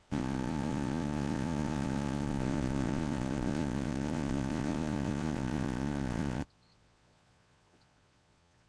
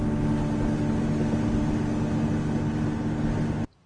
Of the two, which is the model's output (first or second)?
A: first